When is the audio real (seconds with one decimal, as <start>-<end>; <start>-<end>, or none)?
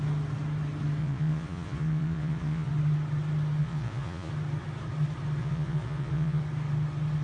0.0-1.0; 2.7-3.6; 4.3-5.4; 6.4-7.2